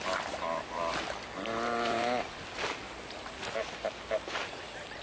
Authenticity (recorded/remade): recorded